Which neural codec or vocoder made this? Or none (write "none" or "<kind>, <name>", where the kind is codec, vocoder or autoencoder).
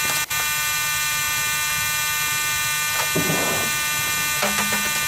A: none